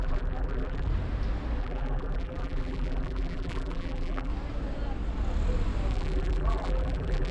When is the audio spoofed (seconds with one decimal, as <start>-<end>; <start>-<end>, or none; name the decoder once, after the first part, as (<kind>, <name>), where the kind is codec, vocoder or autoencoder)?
0.0-0.9 (vocoder, BigVGAN v2); 1.6-4.3; 5.9-7.3